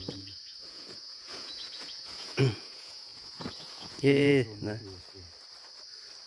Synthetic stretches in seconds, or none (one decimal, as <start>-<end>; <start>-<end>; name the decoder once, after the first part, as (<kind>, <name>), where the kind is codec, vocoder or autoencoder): 0.0-4.3 (vocoder, Vocos)